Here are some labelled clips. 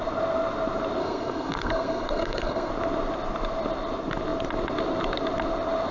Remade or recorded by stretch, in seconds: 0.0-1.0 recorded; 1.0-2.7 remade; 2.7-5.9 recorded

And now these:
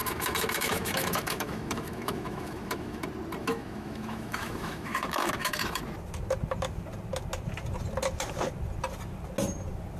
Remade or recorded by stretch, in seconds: 0.0-3.0 remade; 3.0-3.4 recorded; 3.4-5.8 remade; 5.8-10.0 recorded

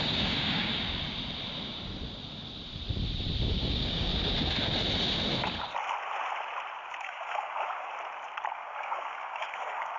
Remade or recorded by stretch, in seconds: 0.0-0.7 remade; 0.7-3.5 recorded; 3.5-4.1 remade; 4.1-7.0 recorded; 7.0-7.9 remade; 7.9-8.5 recorded; 8.5-10.0 remade

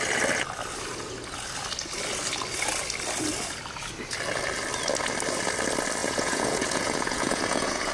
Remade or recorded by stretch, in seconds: 0.0-6.0 recorded; 6.0-7.9 remade

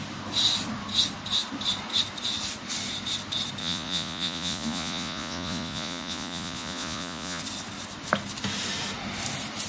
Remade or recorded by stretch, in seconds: 0.0-3.6 recorded; 3.6-7.4 remade; 7.4-9.7 recorded

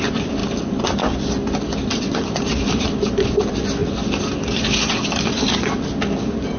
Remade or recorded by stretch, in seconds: 0.0-0.4 recorded; 0.4-2.7 remade; 2.7-3.8 recorded; 3.8-6.6 remade

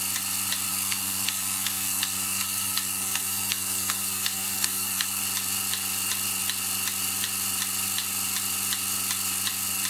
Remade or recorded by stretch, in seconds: 0.0-0.7 recorded; 0.7-5.2 remade; 5.2-9.9 recorded

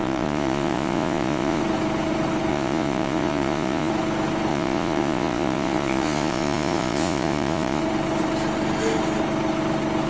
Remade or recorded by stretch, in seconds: 0.0-1.6 remade; 1.6-2.5 recorded; 2.5-3.9 remade; 3.9-4.5 recorded; 4.5-7.8 remade; 7.8-10.1 recorded